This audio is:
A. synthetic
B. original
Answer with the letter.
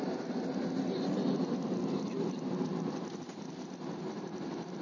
B